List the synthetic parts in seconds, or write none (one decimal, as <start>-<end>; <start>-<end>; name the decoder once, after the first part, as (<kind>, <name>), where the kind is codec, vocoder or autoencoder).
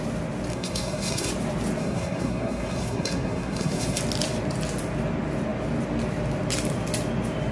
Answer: 0.5-1.3 (codec, SNAC); 1.8-4.0